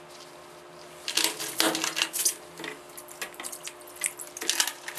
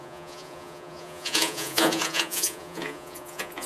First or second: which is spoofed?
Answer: second